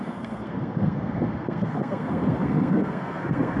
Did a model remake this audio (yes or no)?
yes